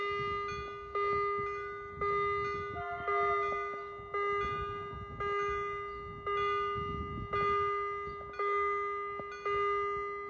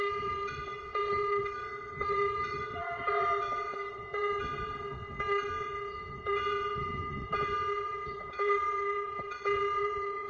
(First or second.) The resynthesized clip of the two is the second